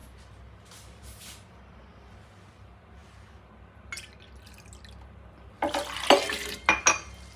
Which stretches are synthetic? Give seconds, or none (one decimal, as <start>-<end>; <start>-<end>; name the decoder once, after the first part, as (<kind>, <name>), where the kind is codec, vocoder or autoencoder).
none